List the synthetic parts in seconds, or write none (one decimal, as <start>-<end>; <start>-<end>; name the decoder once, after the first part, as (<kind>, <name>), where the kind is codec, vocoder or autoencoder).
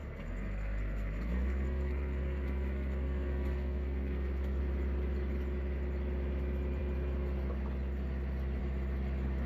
0.0-4.6 (codec, SNAC)